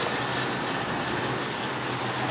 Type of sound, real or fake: real